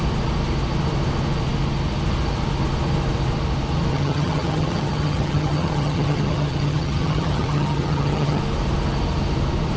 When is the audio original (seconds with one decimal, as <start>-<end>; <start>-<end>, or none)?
0.0-3.9; 8.4-9.8